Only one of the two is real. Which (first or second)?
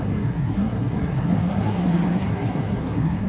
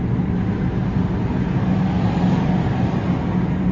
second